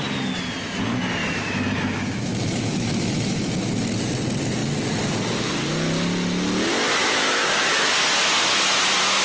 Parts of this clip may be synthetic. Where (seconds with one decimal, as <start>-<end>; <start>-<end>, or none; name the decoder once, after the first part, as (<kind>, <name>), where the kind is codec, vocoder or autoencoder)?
1.2-3.5 (autoencoder, DAC-VAE); 7.0-7.9